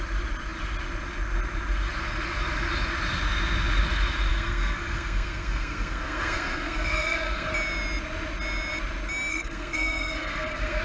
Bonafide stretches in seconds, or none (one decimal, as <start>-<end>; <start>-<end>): 0.0-4.3; 7.5-9.3